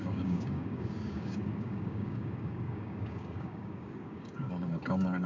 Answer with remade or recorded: remade